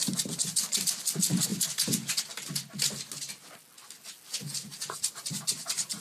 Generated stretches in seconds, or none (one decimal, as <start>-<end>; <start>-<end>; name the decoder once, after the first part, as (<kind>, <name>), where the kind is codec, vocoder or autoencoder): none